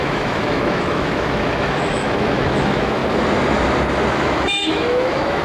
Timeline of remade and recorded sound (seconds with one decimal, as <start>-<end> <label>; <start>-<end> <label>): 0.0-3.0 remade; 3.0-4.1 recorded; 4.1-5.4 remade